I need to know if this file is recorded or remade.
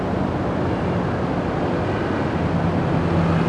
recorded